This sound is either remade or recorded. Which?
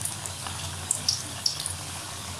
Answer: remade